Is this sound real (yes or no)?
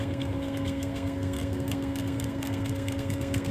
no